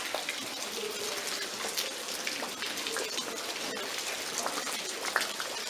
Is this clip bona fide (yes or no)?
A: yes